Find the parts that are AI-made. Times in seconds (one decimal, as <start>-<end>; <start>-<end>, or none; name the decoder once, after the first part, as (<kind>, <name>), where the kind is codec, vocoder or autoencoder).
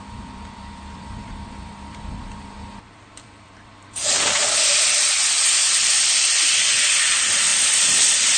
0.0-7.5 (vocoder, BigVGAN v2)